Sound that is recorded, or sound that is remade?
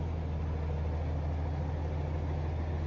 recorded